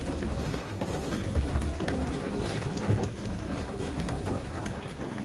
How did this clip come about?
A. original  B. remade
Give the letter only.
B